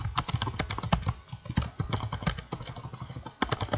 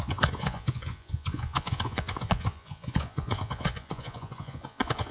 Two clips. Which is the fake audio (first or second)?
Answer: second